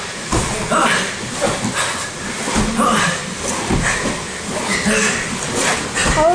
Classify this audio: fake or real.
real